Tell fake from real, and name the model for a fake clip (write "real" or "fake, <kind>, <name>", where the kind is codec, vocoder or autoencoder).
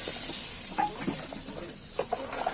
real